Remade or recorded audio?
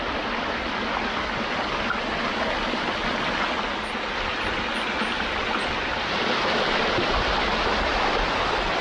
recorded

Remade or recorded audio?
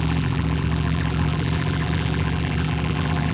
remade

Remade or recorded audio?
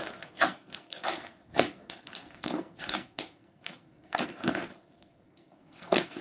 remade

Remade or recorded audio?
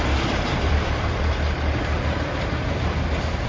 remade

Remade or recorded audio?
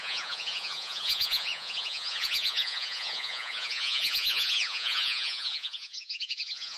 remade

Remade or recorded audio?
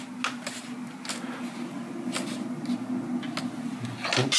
recorded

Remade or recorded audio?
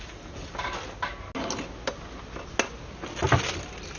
recorded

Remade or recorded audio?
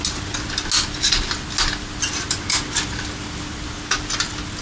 recorded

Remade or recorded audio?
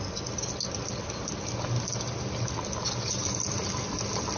recorded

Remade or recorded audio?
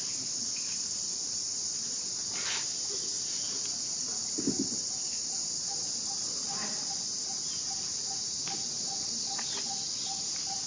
recorded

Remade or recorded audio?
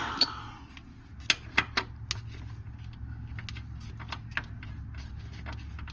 recorded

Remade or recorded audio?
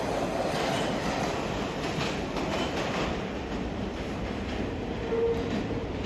recorded